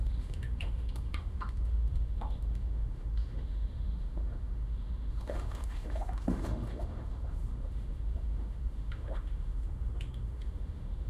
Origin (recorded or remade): remade